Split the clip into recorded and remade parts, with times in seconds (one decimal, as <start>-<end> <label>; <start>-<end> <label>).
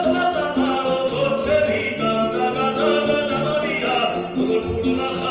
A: 0.0-5.3 recorded